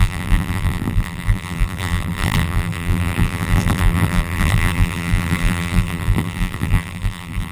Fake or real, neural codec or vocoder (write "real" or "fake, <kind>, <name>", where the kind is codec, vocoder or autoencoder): fake, vocoder, BigVGAN v2